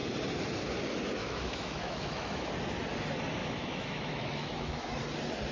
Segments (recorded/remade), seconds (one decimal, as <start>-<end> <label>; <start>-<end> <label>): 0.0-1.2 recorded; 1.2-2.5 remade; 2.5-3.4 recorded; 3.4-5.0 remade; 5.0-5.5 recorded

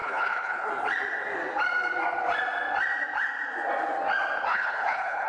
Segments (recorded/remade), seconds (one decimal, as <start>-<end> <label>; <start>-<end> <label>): 0.0-0.7 remade; 0.7-4.5 recorded; 4.5-5.3 remade

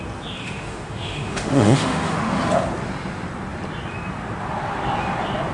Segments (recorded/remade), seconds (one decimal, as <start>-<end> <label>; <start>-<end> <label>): 0.0-0.4 recorded; 0.4-2.3 remade; 2.3-5.5 recorded